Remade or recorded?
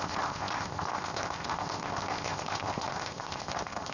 remade